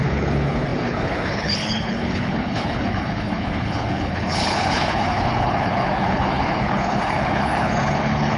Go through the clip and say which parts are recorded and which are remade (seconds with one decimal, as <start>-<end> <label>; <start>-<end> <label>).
0.0-8.4 remade